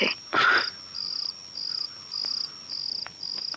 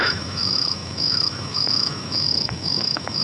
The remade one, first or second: second